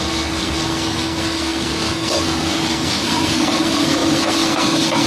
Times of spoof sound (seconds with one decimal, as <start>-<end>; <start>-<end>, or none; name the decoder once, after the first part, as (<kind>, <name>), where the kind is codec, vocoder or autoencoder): 0.0-5.1 (codec, SNAC)